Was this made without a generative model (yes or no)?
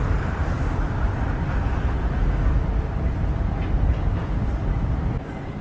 yes